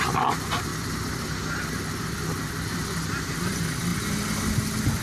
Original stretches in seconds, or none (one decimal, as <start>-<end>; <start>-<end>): 0.0-5.0